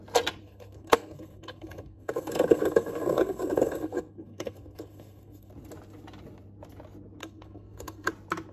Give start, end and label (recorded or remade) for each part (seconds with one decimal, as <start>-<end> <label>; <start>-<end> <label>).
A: 0.0-0.4 recorded; 0.4-5.5 remade; 5.5-7.2 recorded; 7.2-8.1 remade; 8.1-8.5 recorded